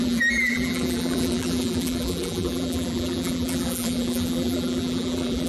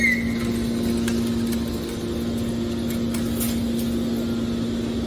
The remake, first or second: first